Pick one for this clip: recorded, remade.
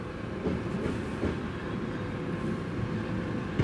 recorded